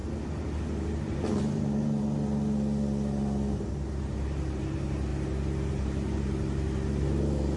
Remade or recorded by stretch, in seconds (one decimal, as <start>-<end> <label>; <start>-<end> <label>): 0.0-4.0 recorded; 4.0-5.1 remade; 5.1-5.7 recorded; 5.7-7.6 remade